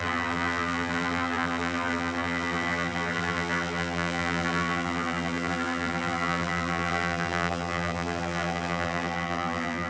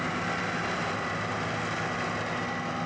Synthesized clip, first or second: first